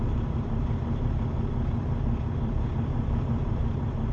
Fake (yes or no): yes